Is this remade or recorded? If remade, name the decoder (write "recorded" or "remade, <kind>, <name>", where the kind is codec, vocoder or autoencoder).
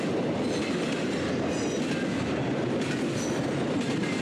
recorded